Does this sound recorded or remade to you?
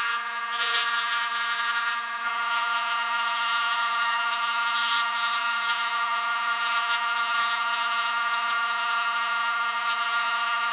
remade